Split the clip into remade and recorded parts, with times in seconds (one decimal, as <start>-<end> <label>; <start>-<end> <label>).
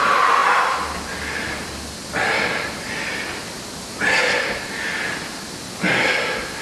0.0-6.6 recorded